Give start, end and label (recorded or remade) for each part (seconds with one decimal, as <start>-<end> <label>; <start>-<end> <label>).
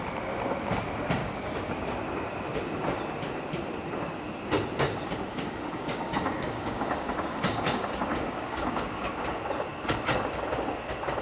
0.0-1.2 recorded; 1.2-1.7 remade; 1.7-5.3 recorded; 5.3-9.4 remade; 9.4-11.2 recorded